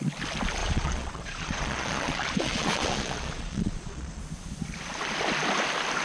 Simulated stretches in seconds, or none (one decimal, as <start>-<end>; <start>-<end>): 0.6-4.2